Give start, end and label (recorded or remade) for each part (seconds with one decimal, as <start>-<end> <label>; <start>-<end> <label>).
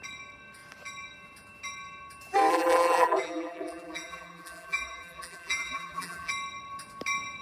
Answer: 0.0-2.5 recorded; 2.5-6.3 remade; 6.3-7.4 recorded